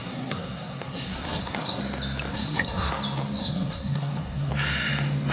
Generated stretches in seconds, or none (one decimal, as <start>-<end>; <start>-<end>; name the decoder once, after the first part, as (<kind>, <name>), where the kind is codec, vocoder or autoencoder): 0.0-1.8 (codec, SNAC); 2.3-2.9; 3.4-4.5